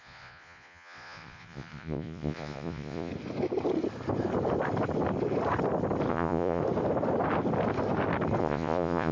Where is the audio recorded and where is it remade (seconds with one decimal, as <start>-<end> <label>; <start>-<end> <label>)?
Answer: 0.0-3.1 remade; 3.1-6.1 recorded; 6.1-6.6 remade; 6.6-8.4 recorded; 8.4-9.1 remade